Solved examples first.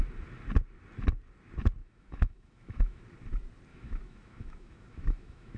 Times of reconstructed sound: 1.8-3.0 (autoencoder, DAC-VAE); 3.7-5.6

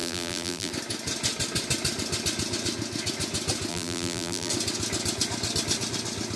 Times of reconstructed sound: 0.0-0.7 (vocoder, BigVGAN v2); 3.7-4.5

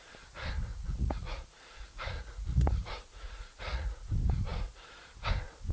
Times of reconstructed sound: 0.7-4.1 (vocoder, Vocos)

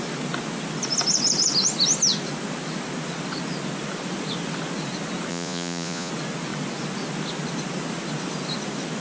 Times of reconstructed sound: 5.3-6.1 (vocoder, Vocos)

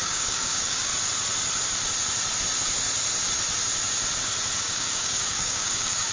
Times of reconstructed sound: 0.0-0.9 (codec, DAC); 4.6-6.1